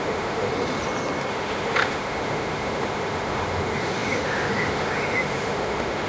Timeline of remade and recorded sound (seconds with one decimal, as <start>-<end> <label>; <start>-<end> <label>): 0.0-0.5 remade; 0.5-1.3 recorded; 1.3-6.1 remade